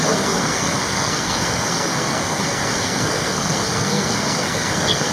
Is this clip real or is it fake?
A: fake